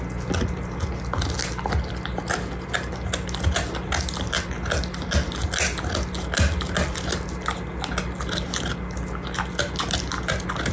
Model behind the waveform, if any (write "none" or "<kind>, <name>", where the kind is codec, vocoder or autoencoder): none